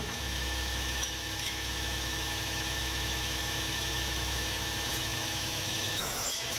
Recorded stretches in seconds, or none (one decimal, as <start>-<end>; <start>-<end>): none